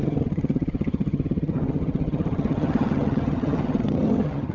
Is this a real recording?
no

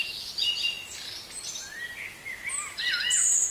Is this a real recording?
yes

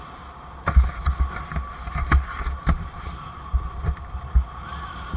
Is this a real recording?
yes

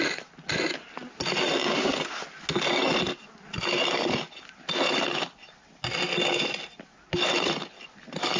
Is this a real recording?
yes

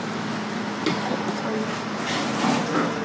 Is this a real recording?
yes